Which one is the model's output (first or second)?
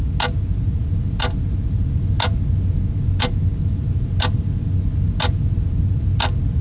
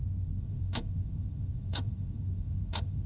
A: second